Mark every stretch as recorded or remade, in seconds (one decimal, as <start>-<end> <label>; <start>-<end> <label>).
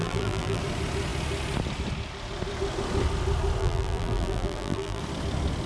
0.0-0.6 remade; 0.6-3.6 recorded; 3.6-5.0 remade; 5.0-5.7 recorded